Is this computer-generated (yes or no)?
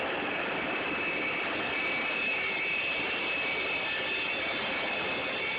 no